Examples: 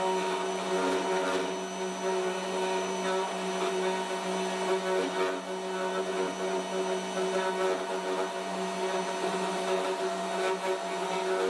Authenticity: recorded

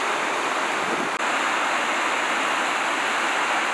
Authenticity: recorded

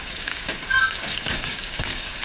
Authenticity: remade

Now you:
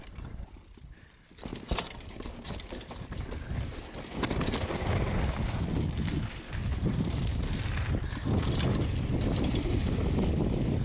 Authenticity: recorded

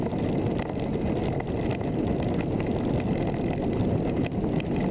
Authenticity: recorded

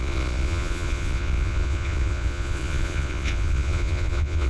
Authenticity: remade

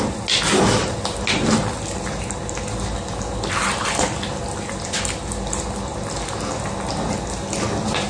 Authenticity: recorded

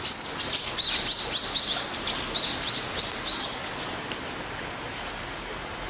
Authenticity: recorded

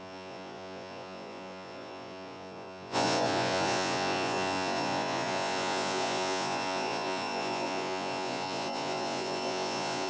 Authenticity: remade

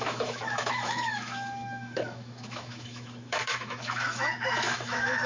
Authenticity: remade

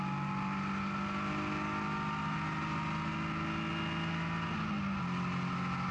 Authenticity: recorded